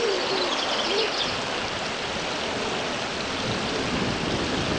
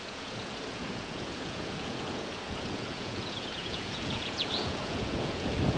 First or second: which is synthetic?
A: second